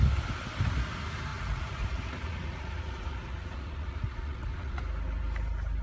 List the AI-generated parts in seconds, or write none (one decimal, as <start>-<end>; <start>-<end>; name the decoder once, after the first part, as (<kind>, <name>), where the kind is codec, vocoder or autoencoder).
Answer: 1.3-4.8 (vocoder, Vocos)